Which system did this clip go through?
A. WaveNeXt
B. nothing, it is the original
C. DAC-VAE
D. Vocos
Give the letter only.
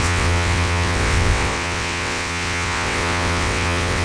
A